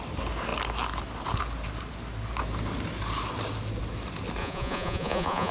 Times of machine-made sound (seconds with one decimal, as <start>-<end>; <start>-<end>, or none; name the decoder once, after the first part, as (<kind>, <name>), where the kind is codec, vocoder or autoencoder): 4.4-5.5 (vocoder, Vocos)